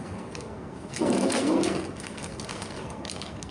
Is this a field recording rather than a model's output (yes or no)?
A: no